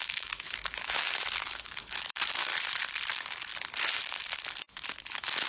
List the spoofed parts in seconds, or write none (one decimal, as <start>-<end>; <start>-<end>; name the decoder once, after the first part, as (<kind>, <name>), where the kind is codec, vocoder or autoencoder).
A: 0.0-2.5 (autoencoder, DAC-VAE); 3.1-3.5; 4.2-5.5